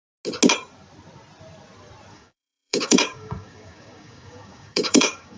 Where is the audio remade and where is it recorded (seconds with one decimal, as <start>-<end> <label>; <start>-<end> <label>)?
0.0-2.1 recorded; 2.1-5.4 remade